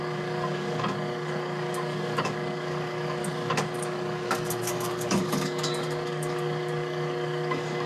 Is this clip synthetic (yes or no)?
yes